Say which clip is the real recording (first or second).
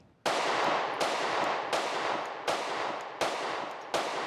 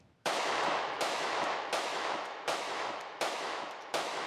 first